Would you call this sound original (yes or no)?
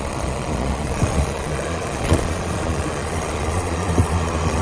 no